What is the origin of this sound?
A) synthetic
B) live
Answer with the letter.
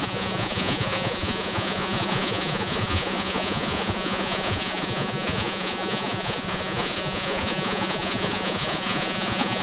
A